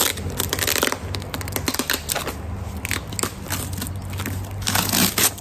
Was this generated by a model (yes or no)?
no